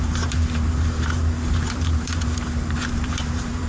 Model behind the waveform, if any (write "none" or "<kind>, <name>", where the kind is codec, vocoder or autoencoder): vocoder, BigVGAN v2